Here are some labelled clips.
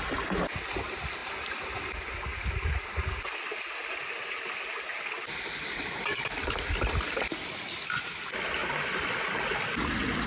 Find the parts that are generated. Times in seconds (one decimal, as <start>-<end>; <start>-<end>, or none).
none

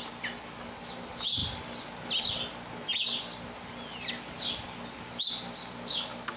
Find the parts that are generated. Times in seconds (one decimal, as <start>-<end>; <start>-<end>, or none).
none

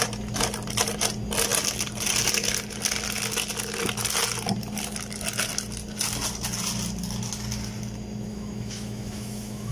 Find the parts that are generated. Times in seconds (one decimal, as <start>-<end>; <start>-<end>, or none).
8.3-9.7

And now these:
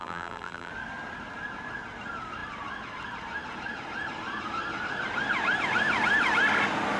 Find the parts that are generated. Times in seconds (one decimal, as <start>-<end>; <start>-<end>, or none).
0.0-0.7

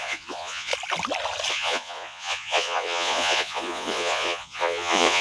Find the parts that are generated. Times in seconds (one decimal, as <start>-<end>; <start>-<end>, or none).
0.0-0.7; 1.5-5.2

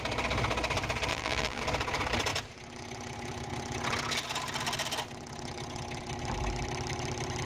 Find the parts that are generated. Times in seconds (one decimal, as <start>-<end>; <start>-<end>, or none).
1.1-1.6